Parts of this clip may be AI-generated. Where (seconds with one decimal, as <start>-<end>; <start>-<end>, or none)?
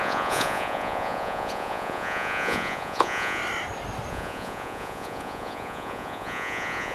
0.0-3.4; 4.1-6.9